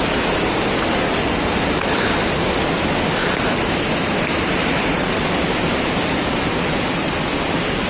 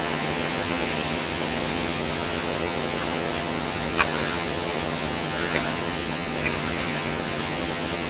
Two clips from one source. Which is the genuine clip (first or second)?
first